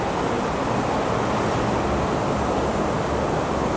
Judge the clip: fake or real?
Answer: real